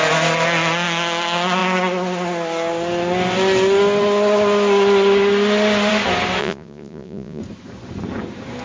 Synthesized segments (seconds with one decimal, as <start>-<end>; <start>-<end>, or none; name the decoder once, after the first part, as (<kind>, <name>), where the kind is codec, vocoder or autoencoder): 6.4-7.4 (vocoder, Vocos)